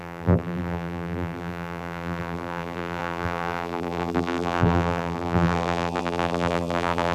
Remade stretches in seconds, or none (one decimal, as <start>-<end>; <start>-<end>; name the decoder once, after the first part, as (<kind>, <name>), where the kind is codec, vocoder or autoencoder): 0.0-7.1 (vocoder, BigVGAN v2)